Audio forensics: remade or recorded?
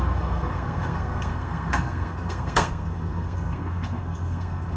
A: remade